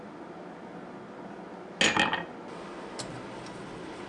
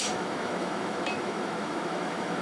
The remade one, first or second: second